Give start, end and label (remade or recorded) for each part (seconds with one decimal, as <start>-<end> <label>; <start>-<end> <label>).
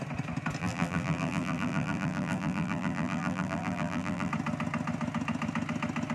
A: 0.0-0.6 recorded; 0.6-4.3 remade; 4.3-6.1 recorded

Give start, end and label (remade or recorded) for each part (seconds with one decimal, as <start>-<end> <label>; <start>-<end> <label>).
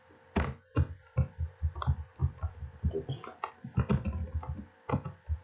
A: 0.0-5.4 recorded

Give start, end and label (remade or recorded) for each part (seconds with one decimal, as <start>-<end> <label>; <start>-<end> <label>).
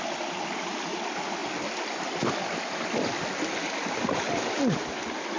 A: 0.0-5.4 recorded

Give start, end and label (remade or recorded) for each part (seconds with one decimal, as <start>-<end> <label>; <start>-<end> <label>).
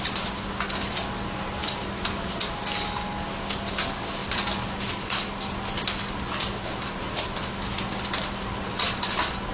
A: 0.0-9.5 recorded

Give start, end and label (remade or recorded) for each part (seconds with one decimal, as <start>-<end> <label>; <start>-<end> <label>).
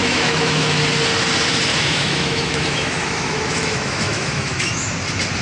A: 0.0-0.8 remade; 0.8-1.7 recorded; 1.7-4.9 remade; 4.9-5.4 recorded